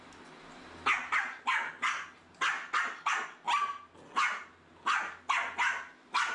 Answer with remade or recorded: recorded